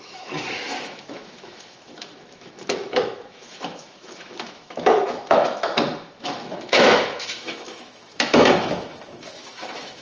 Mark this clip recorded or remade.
remade